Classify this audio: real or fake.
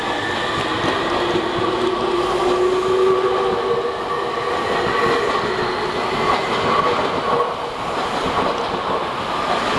real